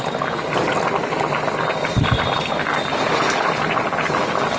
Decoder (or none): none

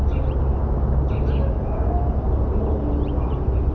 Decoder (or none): none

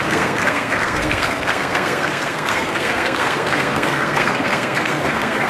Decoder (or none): codec, SNAC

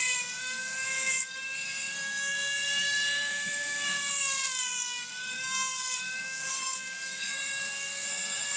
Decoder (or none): codec, SNAC